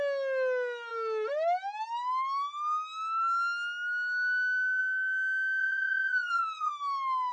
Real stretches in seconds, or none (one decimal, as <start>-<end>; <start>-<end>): 0.0-5.6; 6.7-7.3